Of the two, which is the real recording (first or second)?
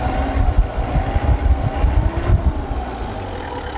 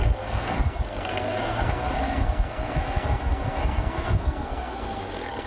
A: first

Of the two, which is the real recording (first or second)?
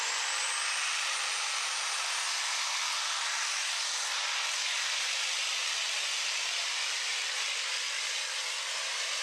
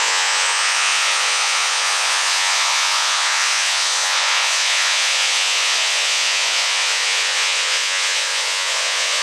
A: first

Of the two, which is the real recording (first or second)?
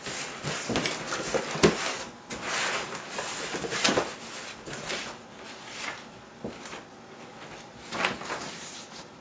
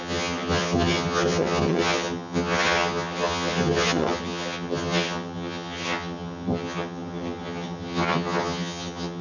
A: first